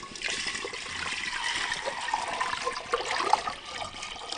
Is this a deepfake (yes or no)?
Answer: no